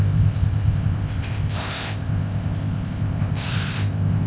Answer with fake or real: fake